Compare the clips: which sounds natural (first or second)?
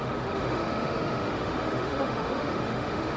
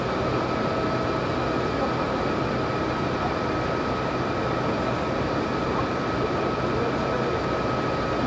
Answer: second